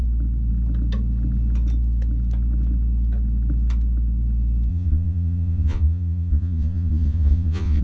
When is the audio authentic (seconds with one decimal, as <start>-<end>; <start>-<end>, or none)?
0.0-4.7